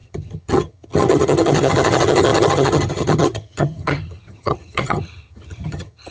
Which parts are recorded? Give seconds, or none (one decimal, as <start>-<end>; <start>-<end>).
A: none